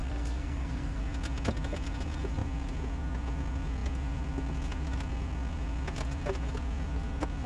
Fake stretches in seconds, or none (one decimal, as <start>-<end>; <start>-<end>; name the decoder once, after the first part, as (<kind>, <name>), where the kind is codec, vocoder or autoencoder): 0.0-1.0 (codec, SNAC)